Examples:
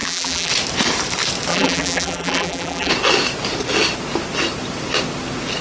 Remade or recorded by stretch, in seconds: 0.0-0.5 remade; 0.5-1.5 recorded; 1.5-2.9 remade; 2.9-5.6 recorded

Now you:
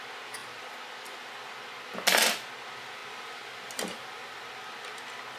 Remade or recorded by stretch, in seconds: 0.0-5.4 recorded

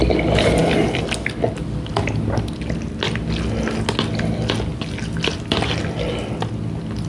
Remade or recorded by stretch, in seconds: 0.0-7.1 recorded

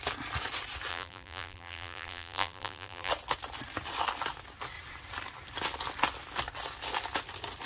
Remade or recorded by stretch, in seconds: 0.0-0.9 recorded; 0.9-3.1 remade; 3.1-7.7 recorded

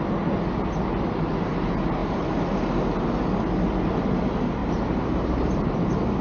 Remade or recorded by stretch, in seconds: 0.0-4.6 recorded; 4.6-5.7 remade; 5.7-6.2 recorded

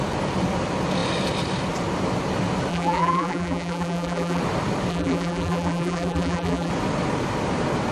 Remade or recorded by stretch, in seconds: 0.0-2.7 recorded; 2.7-4.4 remade; 4.4-4.9 recorded; 4.9-6.7 remade; 6.7-7.9 recorded

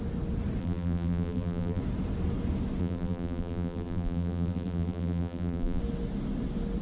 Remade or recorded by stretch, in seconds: 0.0-0.6 recorded; 0.6-1.8 remade; 1.8-2.8 recorded; 2.8-5.8 remade; 5.8-6.8 recorded

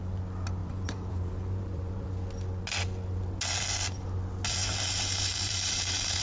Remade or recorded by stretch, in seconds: 0.0-0.6 recorded; 0.6-2.1 remade; 2.1-4.6 recorded; 4.6-6.2 remade